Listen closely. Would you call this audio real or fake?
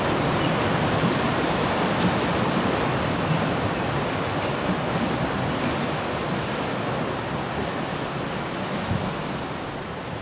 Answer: real